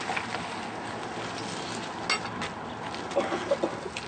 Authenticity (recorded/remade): recorded